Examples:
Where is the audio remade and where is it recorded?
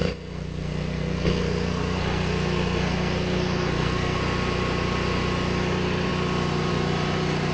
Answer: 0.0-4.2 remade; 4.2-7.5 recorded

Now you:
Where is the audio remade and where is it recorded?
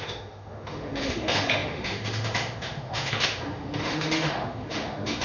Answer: 0.0-5.2 remade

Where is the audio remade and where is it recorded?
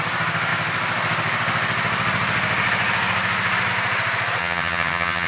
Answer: 0.0-4.4 recorded; 4.4-5.3 remade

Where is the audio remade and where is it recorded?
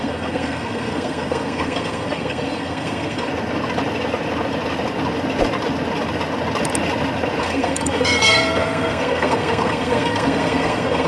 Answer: 0.0-3.3 remade; 3.3-7.4 recorded; 7.4-11.1 remade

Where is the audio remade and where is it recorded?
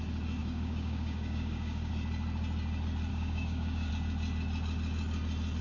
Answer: 0.0-0.4 recorded; 0.4-1.9 remade; 1.9-3.1 recorded; 3.1-3.9 remade; 3.9-5.6 recorded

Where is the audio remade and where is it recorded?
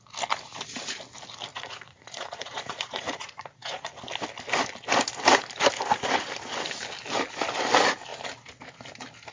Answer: 0.0-1.5 recorded; 1.5-3.9 remade; 3.9-9.3 recorded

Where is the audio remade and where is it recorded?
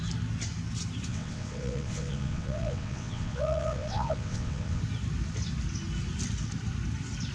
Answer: 0.0-1.1 recorded; 1.1-4.8 remade; 4.8-7.3 recorded